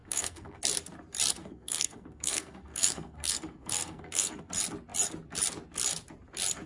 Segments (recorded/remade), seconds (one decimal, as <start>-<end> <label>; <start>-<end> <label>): 0.0-0.6 remade; 0.6-1.4 recorded; 1.4-4.5 remade; 4.5-6.7 recorded